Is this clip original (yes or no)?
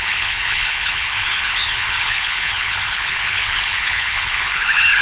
no